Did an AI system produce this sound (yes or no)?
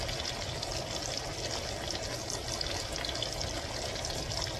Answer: no